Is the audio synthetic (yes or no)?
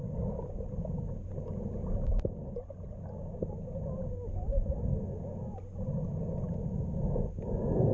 no